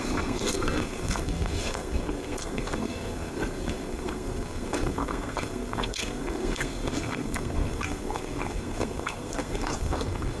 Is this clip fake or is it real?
fake